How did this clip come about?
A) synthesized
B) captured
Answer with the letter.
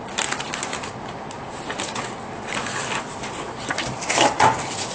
B